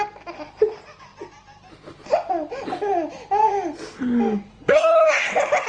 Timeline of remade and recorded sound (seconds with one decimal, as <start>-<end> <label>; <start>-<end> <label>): 0.0-4.5 recorded; 4.5-5.3 remade; 5.3-5.7 recorded